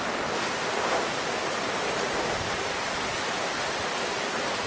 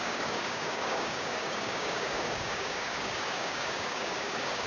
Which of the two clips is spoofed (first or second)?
second